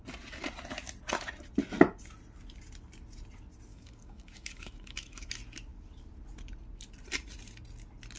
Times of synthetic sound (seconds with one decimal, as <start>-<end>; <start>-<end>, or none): 3.7-5.3